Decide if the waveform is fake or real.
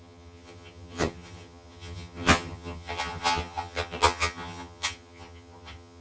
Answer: fake